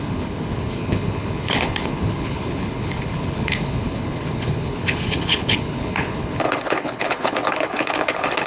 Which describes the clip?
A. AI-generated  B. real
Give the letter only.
A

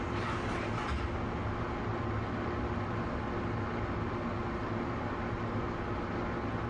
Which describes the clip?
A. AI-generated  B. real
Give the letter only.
B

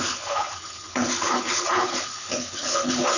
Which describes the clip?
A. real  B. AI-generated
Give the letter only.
B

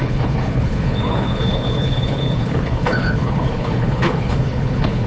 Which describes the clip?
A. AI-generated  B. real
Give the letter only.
A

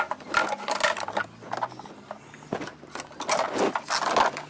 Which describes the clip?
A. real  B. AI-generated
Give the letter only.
A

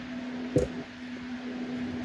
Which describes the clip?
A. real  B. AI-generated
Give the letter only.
A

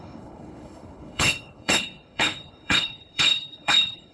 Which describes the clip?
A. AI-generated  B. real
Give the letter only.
A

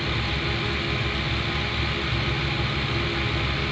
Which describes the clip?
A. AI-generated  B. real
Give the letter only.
B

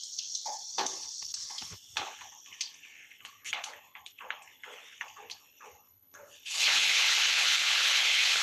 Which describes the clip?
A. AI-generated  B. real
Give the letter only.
A